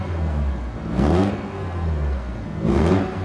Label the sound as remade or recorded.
remade